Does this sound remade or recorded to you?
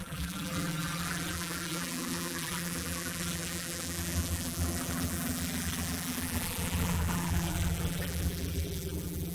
remade